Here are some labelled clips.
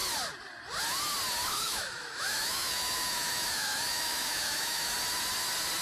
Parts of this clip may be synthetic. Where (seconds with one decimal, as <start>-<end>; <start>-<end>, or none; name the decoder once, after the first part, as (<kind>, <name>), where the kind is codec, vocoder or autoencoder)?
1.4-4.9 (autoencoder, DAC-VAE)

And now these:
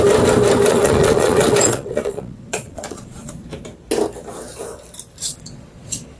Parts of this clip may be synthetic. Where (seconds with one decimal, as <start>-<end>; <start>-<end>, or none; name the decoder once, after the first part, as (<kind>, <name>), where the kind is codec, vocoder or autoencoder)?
0.7-3.3 (vocoder, Vocos); 5.2-6.2

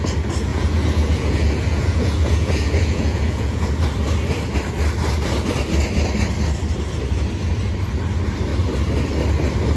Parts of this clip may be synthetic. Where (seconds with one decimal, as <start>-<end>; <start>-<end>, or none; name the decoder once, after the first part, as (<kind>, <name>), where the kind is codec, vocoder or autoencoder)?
0.5-3.7 (vocoder, Vocos)

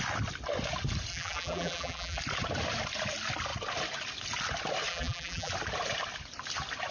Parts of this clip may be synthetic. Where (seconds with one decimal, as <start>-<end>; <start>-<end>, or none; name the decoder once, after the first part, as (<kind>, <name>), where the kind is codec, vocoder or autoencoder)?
1.1-2.2 (vocoder, BigVGAN v2); 4.9-5.5

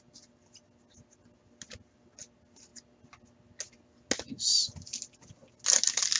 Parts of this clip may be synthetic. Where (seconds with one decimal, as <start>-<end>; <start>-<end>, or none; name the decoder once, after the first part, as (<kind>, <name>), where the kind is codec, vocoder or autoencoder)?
none